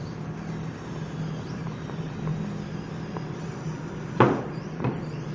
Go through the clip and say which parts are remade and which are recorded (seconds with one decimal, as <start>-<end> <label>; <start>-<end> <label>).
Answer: 0.0-1.5 recorded; 1.5-2.3 remade; 2.3-2.9 recorded; 2.9-5.3 remade